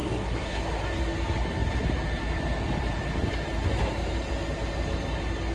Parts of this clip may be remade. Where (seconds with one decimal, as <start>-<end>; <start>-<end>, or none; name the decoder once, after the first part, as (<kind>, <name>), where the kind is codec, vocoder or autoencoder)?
0.0-0.6 (codec, SNAC)